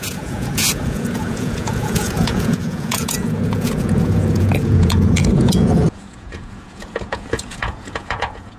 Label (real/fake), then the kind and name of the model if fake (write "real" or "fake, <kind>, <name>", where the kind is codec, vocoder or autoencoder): fake, vocoder, Vocos